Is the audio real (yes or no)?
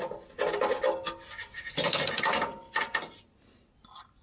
yes